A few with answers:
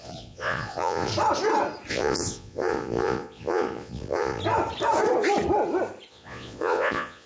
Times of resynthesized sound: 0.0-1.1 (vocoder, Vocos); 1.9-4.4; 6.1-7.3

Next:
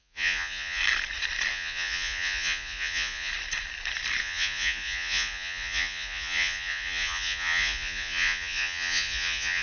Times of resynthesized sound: 0.0-0.8 (vocoder, Vocos); 1.5-3.3; 4.2-9.6